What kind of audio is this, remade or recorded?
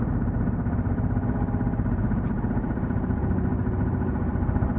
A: recorded